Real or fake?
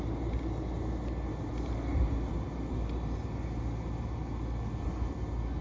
real